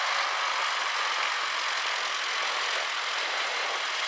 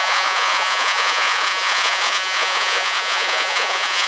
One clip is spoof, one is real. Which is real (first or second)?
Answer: first